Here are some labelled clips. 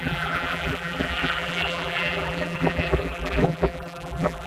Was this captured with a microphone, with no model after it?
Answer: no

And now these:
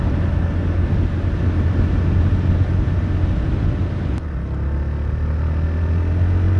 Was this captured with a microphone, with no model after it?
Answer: yes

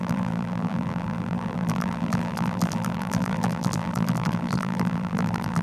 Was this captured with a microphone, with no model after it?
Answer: no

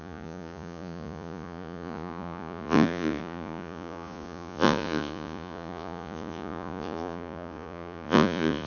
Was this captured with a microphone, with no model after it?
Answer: no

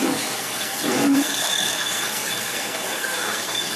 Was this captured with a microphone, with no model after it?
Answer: no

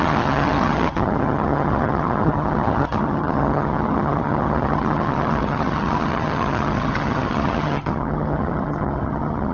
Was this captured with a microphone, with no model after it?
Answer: no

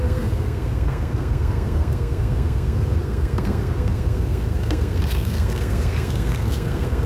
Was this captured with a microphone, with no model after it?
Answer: no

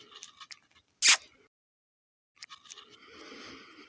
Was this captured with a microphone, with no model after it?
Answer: yes